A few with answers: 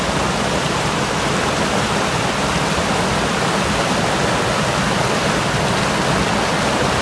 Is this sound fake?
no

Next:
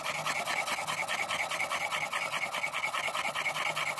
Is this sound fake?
no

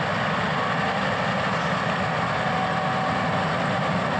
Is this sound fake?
no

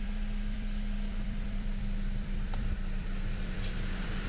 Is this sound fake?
yes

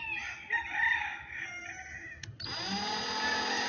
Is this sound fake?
no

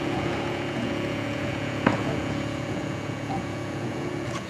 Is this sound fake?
yes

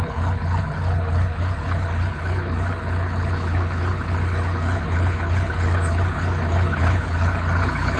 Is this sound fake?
yes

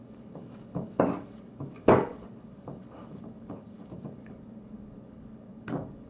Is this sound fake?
yes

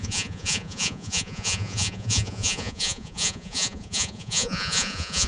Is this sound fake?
yes